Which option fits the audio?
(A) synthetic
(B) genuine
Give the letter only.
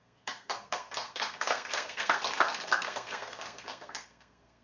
A